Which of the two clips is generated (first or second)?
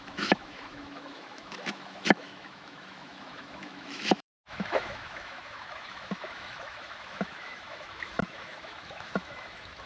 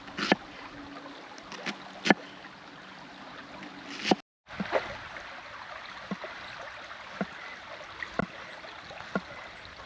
first